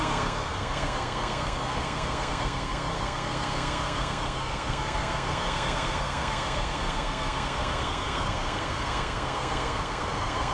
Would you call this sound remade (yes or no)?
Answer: yes